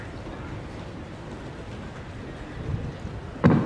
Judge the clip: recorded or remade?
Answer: recorded